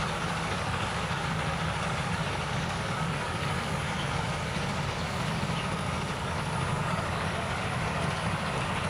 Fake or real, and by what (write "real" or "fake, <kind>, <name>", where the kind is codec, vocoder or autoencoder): fake, codec, DAC